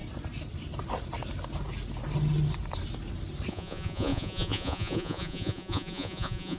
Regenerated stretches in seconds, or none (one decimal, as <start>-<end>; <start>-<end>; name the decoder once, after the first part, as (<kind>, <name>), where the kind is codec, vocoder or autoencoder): 3.5-6.6 (vocoder, Vocos)